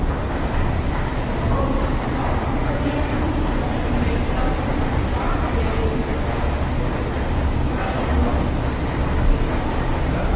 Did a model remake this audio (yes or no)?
no